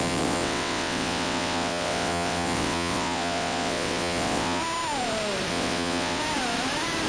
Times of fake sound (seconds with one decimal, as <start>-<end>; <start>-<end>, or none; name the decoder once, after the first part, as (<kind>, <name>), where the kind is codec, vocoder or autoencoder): 0.0-4.6 (vocoder, WaveNeXt); 5.5-6.2